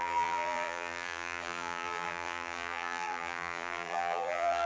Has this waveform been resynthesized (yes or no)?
yes